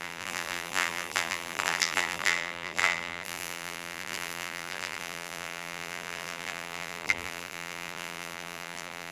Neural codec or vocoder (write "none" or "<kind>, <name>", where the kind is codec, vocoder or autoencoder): vocoder, BigVGAN v2